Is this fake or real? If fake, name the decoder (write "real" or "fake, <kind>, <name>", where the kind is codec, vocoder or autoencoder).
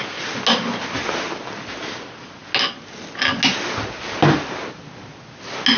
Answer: real